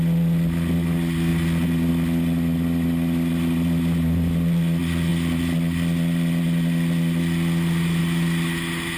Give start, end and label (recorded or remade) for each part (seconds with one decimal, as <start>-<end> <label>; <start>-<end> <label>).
0.0-9.0 recorded